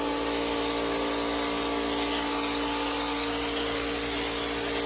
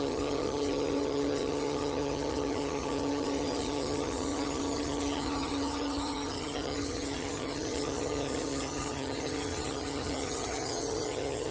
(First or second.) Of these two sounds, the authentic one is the first